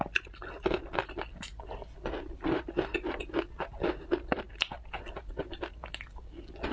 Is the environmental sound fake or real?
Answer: real